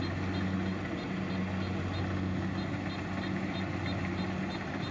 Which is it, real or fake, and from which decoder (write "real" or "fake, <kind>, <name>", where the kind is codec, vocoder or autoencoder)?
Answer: real